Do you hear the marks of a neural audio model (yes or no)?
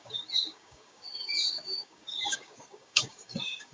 yes